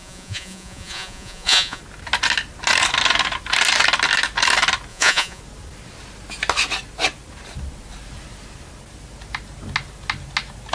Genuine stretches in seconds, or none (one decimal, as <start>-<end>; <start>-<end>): 1.8-4.9; 5.4-10.7